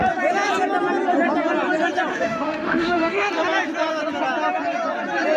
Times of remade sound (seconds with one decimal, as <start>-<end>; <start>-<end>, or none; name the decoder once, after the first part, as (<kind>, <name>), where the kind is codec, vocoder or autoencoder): 2.1-3.3 (autoencoder, DAC-VAE)